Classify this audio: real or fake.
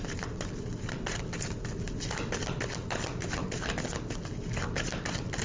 real